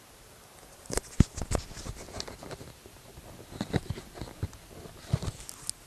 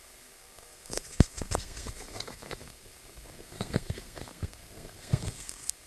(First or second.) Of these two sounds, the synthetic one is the second